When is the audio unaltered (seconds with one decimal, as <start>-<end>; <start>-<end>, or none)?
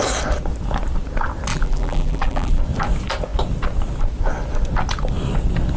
0.0-1.5; 2.6-5.8